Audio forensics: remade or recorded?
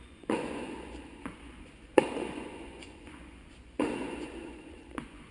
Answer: remade